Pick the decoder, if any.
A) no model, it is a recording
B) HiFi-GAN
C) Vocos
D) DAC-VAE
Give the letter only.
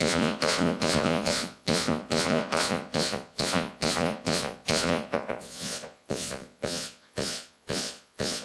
C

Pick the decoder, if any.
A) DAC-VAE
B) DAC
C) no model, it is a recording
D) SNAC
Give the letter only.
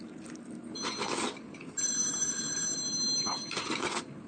C